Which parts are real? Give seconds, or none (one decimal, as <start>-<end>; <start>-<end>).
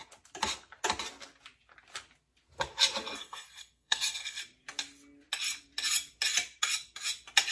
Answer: 0.0-3.2; 4.4-7.5